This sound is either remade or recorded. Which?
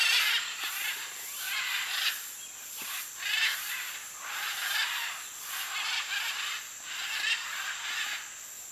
remade